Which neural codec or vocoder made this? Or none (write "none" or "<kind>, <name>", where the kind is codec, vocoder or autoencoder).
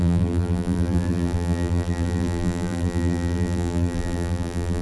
vocoder, BigVGAN v2